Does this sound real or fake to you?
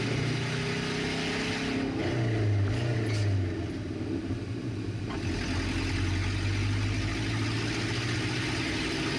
real